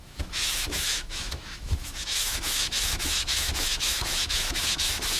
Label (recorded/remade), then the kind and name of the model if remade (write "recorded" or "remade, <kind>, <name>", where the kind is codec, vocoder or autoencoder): remade, autoencoder, DAC-VAE